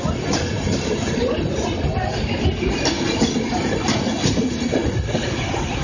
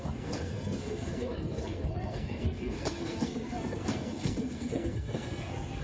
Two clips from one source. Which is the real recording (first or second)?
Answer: first